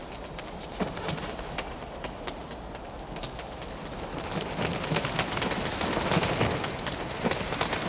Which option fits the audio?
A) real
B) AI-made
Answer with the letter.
A